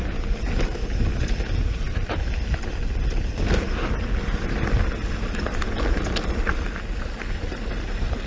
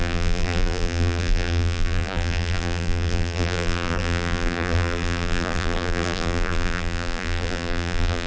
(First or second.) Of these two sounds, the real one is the first